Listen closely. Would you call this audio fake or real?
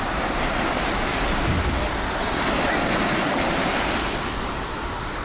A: real